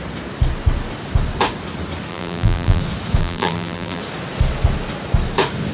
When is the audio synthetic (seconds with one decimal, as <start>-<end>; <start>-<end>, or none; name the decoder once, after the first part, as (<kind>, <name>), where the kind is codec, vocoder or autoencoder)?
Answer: 2.1-2.8 (vocoder, BigVGAN v2); 3.2-4.0

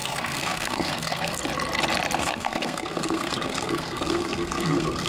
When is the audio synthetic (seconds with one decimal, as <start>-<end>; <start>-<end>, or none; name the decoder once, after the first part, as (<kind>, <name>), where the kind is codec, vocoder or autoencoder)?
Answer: 0.0-1.4 (codec, SNAC); 2.2-5.1

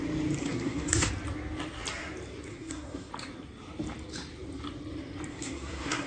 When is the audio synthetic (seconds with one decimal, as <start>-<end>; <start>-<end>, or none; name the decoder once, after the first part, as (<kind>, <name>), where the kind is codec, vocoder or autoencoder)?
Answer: 0.4-1.1 (codec, SNAC); 2.5-3.1; 5.3-6.1

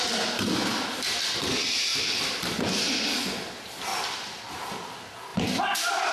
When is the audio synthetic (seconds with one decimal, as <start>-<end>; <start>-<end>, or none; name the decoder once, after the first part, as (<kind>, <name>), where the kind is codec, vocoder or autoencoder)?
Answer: 1.9-2.6 (vocoder, BigVGAN v2); 3.9-4.6; 5.3-6.1

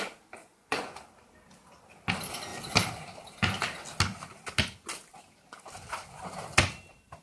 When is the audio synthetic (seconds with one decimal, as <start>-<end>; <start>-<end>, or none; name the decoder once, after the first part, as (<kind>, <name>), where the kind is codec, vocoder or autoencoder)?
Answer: 0.4-1.0 (vocoder, Vocos)

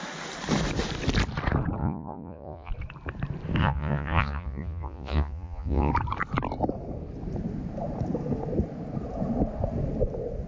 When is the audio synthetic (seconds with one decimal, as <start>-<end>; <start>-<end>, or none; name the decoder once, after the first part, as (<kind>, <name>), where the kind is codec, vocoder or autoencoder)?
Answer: 1.8-2.7 (vocoder, Vocos); 3.6-5.9

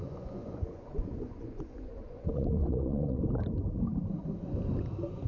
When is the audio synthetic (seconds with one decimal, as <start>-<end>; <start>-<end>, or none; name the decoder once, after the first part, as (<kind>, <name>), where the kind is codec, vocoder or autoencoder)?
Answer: 0.0-3.2 (vocoder, Vocos)